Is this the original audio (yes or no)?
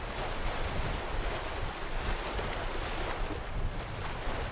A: yes